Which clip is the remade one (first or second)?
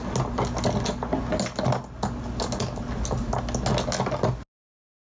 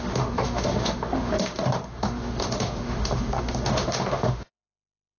second